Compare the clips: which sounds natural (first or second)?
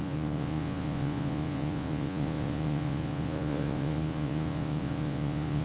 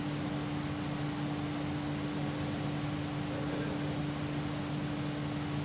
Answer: second